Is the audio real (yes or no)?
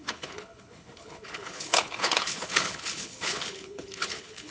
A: no